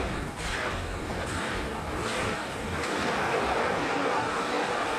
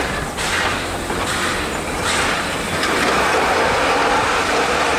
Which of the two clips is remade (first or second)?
first